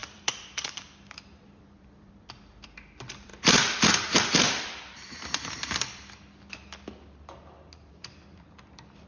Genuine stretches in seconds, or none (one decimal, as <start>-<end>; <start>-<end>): 3.3-7.9